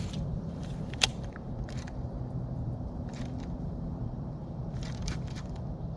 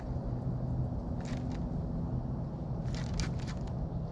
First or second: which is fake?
first